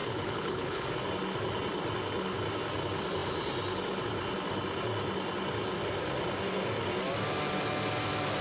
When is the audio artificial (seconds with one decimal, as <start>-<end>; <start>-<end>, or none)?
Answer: 0.0-0.9